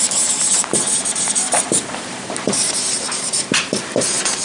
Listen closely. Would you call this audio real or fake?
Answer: fake